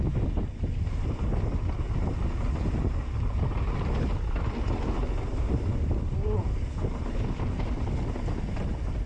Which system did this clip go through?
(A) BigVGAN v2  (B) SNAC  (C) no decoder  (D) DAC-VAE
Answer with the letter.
C